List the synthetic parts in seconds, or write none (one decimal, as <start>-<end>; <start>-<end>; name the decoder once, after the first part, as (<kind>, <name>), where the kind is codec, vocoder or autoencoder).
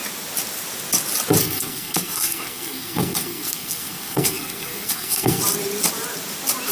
1.4-5.4 (codec, SNAC)